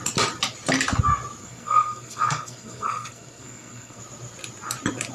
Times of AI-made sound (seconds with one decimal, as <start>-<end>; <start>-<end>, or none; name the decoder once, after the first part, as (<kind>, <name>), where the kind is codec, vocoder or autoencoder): 1.4-4.0 (codec, SNAC)